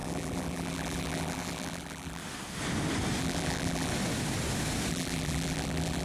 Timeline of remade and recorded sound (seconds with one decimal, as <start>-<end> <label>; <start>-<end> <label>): 0.0-2.2 remade; 2.2-3.2 recorded; 3.2-3.9 remade; 3.9-4.9 recorded; 4.9-6.0 remade